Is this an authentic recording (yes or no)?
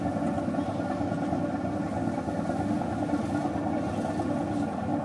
yes